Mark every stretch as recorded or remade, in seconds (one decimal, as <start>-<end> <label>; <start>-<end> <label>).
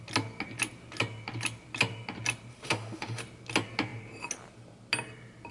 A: 0.0-2.5 recorded; 2.5-3.2 remade; 3.2-5.5 recorded